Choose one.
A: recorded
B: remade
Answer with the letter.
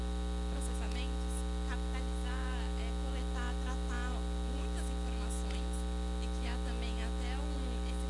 A